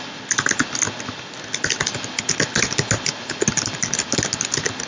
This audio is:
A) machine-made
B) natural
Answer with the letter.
B